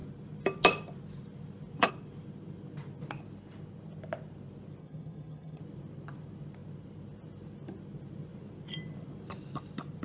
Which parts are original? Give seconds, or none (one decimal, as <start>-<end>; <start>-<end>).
0.0-4.8; 5.6-10.0